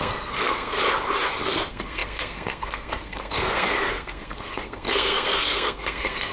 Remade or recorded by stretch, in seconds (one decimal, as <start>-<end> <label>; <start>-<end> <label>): 0.0-0.8 remade; 0.8-1.5 recorded; 1.5-6.3 remade